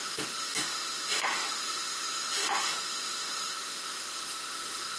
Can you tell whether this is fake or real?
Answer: fake